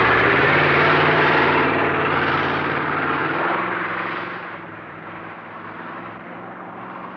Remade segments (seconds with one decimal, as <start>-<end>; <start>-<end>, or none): 0.0-7.2